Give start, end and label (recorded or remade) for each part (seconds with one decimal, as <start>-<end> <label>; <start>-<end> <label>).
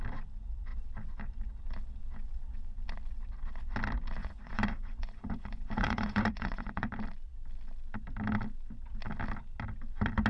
0.0-4.2 recorded; 4.2-6.9 remade; 6.9-10.3 recorded